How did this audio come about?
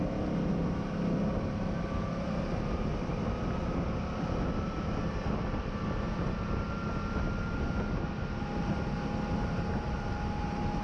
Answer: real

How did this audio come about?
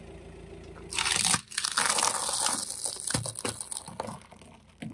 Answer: real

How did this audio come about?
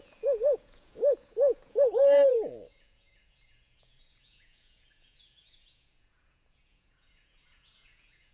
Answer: fake